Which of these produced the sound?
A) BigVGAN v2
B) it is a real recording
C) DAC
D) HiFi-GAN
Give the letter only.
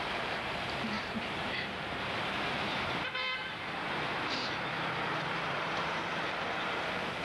A